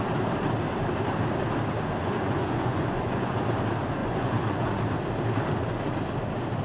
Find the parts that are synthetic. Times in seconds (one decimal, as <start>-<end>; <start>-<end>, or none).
2.0-3.4; 4.0-4.8